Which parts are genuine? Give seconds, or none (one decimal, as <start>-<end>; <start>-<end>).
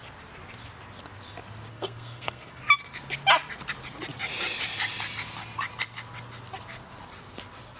0.0-1.7; 2.6-7.8